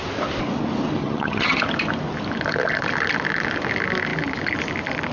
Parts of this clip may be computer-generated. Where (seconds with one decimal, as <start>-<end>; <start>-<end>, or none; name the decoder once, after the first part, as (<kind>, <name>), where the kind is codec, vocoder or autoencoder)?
1.0-1.6 (vocoder, HiFi-GAN)